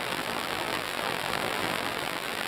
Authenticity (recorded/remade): remade